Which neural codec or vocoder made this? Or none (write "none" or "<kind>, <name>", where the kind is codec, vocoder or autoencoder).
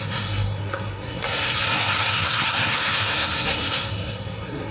codec, SNAC